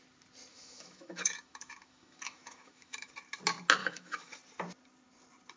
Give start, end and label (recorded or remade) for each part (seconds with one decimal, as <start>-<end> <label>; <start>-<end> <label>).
0.0-0.5 recorded; 0.5-3.1 remade; 3.1-3.8 recorded; 3.8-4.3 remade; 4.3-5.6 recorded